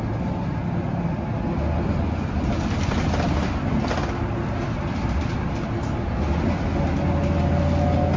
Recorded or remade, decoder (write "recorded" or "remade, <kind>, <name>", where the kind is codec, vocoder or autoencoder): recorded